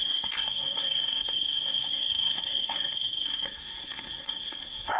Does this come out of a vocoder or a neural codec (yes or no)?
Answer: yes